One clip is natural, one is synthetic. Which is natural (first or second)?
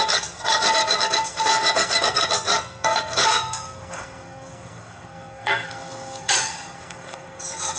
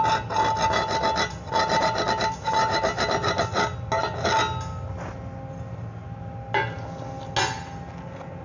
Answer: second